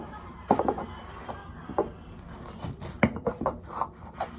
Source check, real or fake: real